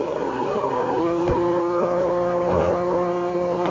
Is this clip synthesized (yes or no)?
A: yes